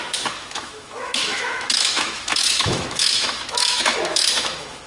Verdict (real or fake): fake